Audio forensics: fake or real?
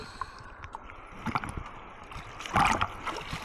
real